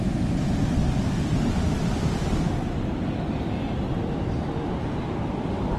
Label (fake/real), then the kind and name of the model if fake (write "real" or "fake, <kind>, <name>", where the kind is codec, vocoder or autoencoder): real